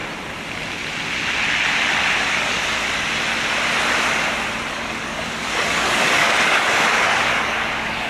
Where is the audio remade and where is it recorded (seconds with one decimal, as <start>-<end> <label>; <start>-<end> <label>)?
0.0-2.2 recorded; 2.2-2.8 remade; 2.8-4.7 recorded; 4.7-8.1 remade